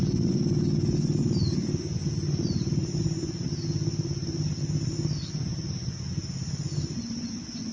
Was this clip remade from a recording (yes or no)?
no